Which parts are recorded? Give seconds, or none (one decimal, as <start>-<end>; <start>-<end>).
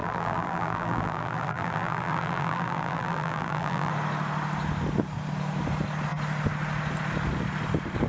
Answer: 3.9-8.1